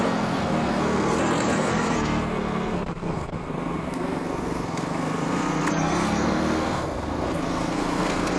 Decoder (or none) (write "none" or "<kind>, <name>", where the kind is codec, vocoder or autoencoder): codec, SNAC